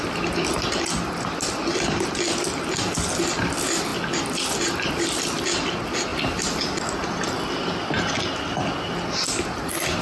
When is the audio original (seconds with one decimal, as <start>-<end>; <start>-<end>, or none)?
0.0-6.1; 7.2-10.0